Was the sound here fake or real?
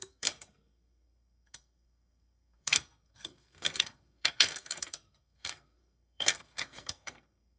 fake